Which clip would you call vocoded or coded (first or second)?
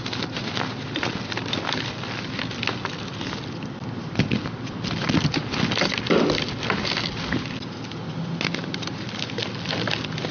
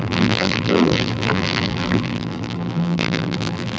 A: second